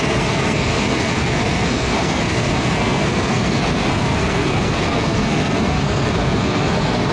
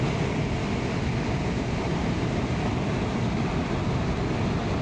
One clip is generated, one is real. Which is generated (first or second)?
first